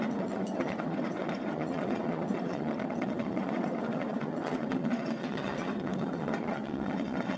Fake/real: fake